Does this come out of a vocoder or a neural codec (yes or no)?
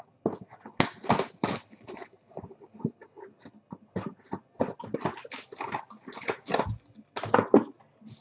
no